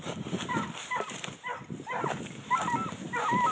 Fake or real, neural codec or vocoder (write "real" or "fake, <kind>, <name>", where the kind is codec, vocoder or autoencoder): real